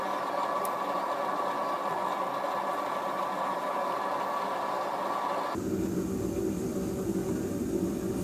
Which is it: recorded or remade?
recorded